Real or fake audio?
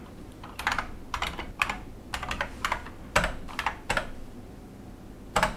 real